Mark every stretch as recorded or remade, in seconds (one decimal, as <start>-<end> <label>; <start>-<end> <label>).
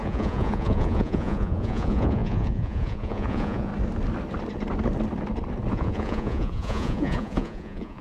0.0-3.7 remade; 3.7-5.7 recorded; 5.7-8.0 remade